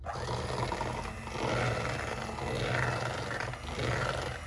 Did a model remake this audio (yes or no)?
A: no